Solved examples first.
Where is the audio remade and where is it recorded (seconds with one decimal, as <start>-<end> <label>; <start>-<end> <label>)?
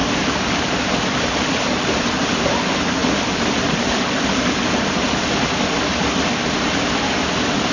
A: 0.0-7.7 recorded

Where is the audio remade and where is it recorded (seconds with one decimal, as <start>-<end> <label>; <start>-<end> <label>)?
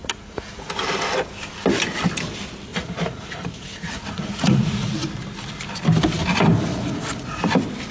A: 0.0-0.7 remade; 0.7-2.7 recorded; 2.7-4.9 remade; 4.9-6.7 recorded; 6.7-7.4 remade; 7.4-7.9 recorded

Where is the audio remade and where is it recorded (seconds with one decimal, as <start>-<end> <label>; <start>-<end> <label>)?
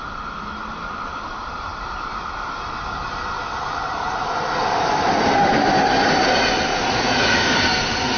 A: 0.0-6.7 recorded; 6.7-7.3 remade; 7.3-8.2 recorded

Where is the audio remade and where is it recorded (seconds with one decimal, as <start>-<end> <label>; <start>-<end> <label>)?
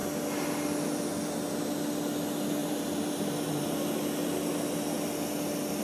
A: 0.0-2.6 recorded; 2.6-3.5 remade; 3.5-5.8 recorded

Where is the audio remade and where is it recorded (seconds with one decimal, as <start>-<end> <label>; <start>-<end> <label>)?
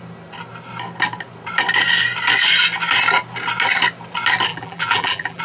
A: 0.0-4.5 recorded; 4.5-5.4 remade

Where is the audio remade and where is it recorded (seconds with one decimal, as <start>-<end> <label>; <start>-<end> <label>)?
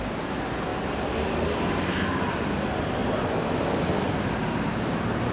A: 0.0-5.3 recorded